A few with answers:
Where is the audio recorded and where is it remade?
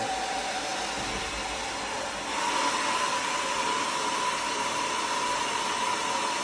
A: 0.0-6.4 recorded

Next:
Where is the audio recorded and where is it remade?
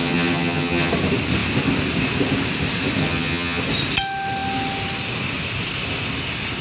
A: 0.0-0.9 remade; 0.9-3.0 recorded; 3.0-3.6 remade; 3.6-6.6 recorded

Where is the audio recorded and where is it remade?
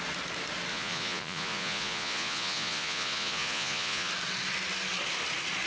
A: 0.0-0.7 recorded; 0.7-4.1 remade; 4.1-5.7 recorded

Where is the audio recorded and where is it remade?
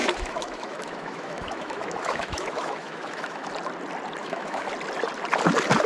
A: 0.0-3.5 remade; 3.5-4.2 recorded; 4.2-4.7 remade; 4.7-5.9 recorded